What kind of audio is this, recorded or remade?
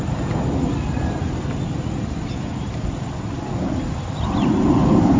recorded